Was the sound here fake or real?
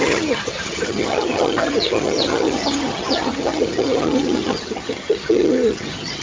fake